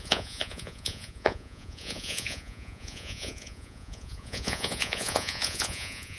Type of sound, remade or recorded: remade